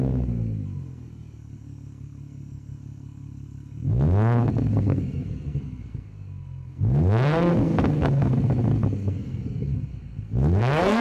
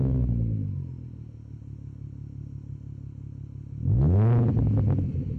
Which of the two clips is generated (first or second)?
first